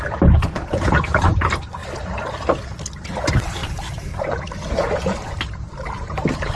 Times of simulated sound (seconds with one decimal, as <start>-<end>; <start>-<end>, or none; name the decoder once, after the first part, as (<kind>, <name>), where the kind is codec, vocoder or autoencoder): 0.0-1.8 (vocoder, BigVGAN v2); 3.1-6.6